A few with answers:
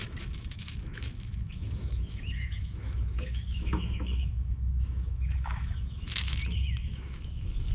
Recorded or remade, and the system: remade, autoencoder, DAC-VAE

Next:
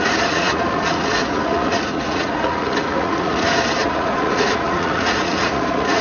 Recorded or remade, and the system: remade, vocoder, Vocos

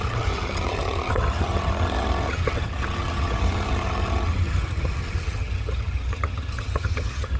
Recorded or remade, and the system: remade, vocoder, HiFi-GAN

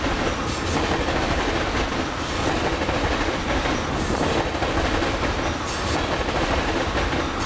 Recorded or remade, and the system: recorded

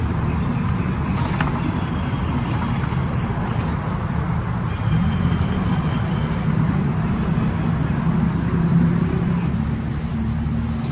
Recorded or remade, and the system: recorded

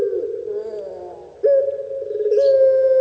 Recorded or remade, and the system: recorded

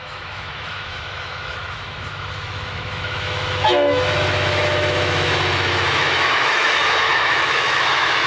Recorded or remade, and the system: remade, autoencoder, DAC-VAE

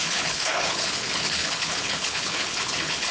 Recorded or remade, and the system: remade, codec, HILCodec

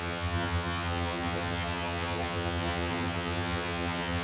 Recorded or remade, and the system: remade, vocoder, HiFi-GAN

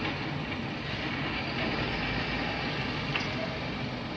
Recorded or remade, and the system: recorded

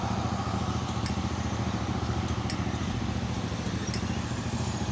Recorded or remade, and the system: recorded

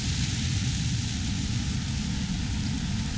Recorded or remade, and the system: recorded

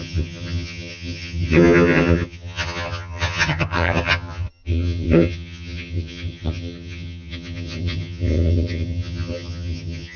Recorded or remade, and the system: remade, vocoder, HiFi-GAN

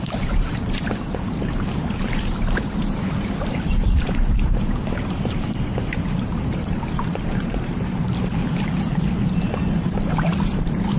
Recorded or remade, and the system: remade, vocoder, BigVGAN v2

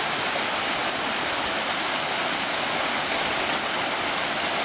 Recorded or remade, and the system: recorded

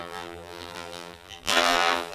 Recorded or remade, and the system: remade, vocoder, BigVGAN v2